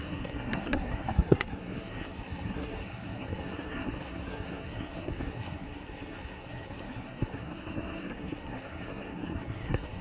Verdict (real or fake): fake